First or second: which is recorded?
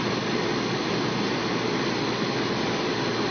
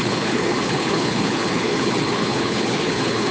first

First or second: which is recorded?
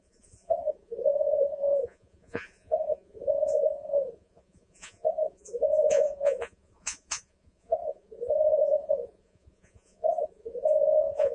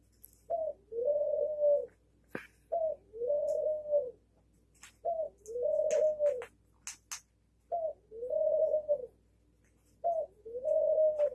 second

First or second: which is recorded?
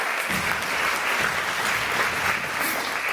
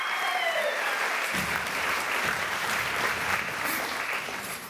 first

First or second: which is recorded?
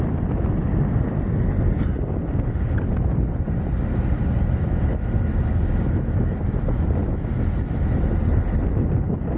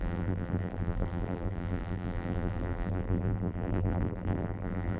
first